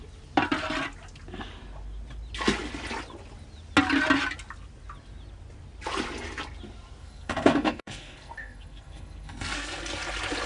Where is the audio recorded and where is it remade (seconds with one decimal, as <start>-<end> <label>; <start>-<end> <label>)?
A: 0.0-7.0 recorded; 7.0-9.8 remade; 9.8-10.5 recorded